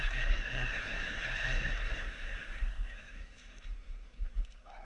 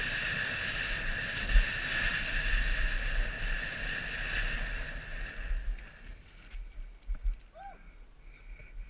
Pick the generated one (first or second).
first